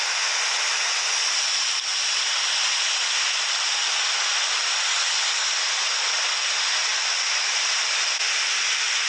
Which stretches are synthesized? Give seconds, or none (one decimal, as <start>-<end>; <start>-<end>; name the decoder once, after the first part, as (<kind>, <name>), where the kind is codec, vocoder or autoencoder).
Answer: none